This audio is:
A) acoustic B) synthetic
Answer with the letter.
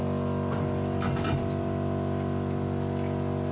A